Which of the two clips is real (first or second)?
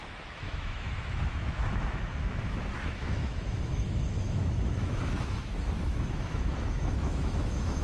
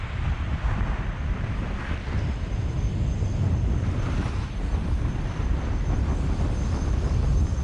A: second